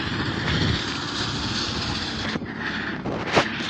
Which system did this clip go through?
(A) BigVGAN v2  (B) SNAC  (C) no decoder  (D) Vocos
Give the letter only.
C